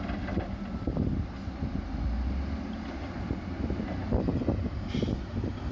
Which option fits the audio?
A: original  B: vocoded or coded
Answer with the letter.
A